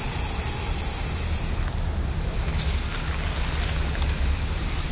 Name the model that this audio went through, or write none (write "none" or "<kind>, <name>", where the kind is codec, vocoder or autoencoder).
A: none